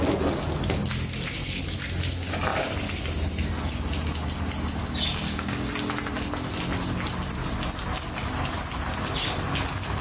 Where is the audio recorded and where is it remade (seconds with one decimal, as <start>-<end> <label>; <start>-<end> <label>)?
0.0-5.1 recorded; 5.1-5.7 remade; 5.7-10.0 recorded